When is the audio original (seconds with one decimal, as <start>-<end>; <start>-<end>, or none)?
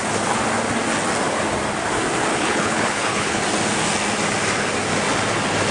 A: 0.0-2.3; 3.4-5.7